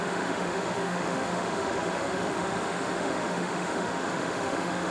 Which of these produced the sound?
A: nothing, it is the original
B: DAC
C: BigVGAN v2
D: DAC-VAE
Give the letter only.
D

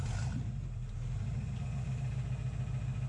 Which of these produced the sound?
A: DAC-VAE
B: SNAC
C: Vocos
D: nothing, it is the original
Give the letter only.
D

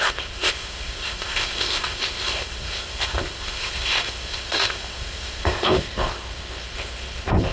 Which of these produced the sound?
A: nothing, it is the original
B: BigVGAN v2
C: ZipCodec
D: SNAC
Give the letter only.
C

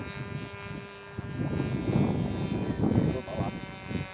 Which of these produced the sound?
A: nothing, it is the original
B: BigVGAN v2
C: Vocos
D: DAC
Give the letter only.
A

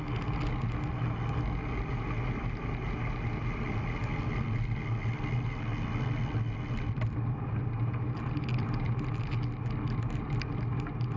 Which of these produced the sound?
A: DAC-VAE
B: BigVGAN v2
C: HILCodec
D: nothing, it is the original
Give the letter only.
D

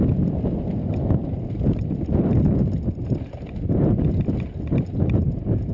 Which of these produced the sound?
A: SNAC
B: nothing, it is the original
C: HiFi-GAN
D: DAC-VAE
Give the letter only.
B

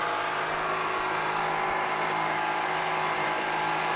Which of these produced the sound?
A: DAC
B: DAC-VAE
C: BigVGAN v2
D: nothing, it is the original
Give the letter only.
D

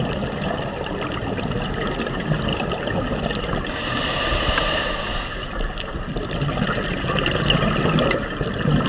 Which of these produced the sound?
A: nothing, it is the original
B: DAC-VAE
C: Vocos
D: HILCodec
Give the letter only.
A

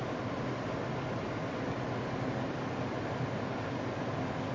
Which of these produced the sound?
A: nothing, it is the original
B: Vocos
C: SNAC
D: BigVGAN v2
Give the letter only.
A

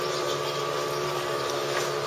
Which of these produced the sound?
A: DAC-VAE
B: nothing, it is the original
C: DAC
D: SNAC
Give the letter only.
B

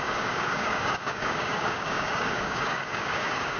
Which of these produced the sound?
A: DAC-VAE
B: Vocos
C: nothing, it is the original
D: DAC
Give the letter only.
D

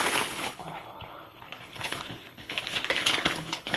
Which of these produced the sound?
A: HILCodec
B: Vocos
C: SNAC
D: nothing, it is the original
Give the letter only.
A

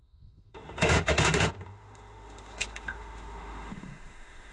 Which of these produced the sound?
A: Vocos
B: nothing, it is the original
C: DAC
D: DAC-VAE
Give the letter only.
D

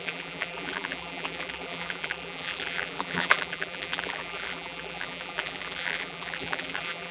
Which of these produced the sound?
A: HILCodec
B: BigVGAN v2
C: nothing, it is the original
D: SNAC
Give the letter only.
B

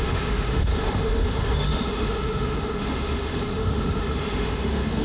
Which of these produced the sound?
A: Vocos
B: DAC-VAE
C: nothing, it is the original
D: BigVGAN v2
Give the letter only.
B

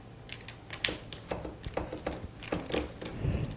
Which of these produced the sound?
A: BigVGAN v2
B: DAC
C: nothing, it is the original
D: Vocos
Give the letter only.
C